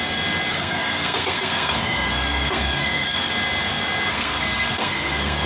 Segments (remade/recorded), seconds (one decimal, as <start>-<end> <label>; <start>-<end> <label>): 0.0-0.5 recorded; 0.5-3.3 remade; 3.3-4.1 recorded; 4.1-5.5 remade